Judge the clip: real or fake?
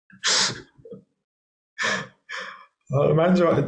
real